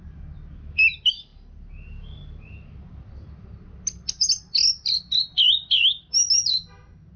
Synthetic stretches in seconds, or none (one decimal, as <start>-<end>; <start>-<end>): none